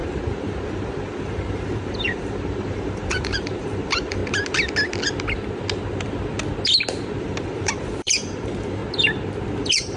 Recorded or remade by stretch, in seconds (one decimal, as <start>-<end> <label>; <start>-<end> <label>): 0.0-4.2 remade; 4.2-7.2 recorded; 7.2-8.8 remade; 8.8-9.6 recorded; 9.6-10.0 remade